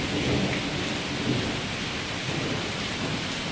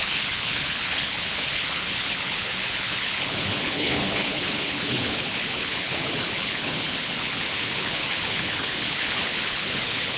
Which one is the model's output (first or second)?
second